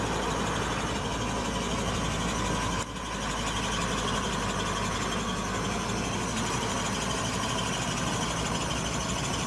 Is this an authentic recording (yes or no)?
yes